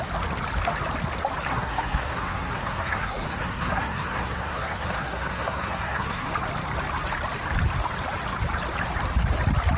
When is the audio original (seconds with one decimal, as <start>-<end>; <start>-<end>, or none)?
0.0-1.5; 6.3-9.8